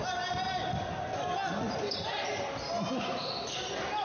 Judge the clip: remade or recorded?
recorded